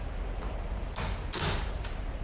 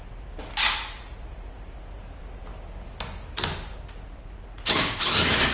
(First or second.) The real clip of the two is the second